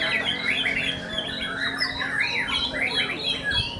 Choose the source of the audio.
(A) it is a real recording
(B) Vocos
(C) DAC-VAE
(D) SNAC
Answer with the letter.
A